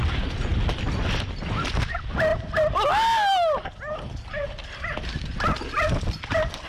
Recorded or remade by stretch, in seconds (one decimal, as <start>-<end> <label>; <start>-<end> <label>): 0.0-6.7 recorded